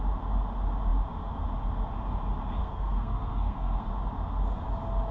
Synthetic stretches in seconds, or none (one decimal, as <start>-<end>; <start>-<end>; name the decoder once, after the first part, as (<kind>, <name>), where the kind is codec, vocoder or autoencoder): 2.6-3.9 (codec, SNAC)